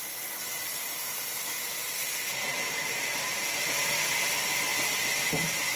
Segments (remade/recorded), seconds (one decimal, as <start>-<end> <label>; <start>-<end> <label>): 0.0-5.8 recorded